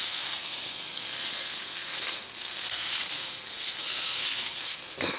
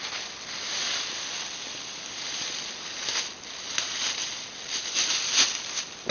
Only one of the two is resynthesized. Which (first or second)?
first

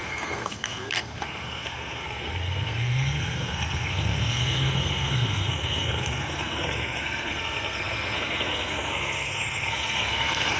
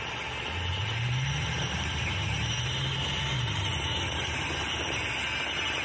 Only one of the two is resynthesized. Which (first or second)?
first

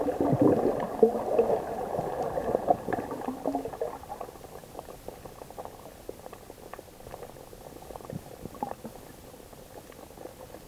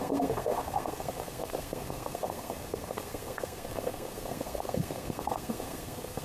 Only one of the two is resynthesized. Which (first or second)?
second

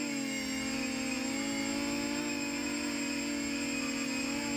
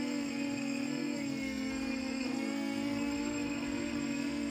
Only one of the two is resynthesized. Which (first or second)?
second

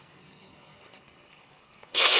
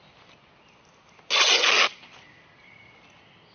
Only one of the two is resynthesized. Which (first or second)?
first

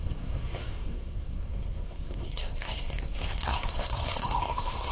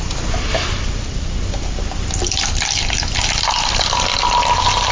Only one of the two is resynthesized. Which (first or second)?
first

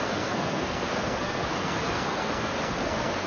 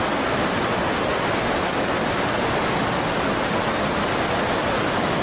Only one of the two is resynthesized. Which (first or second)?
first